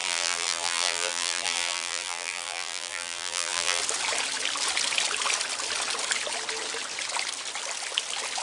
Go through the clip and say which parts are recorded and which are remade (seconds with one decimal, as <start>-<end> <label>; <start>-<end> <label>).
0.0-3.8 remade; 3.8-8.4 recorded